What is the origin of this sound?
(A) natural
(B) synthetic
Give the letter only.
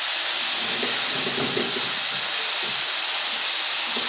A